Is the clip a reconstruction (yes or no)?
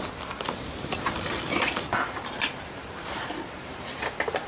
no